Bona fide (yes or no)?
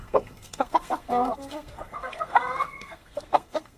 no